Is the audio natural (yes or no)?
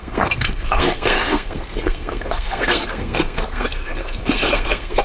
no